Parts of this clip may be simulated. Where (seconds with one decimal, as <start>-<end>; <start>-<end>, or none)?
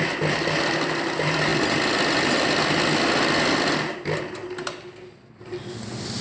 none